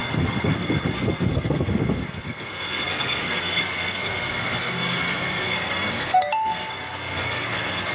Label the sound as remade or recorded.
remade